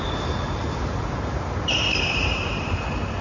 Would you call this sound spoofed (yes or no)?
yes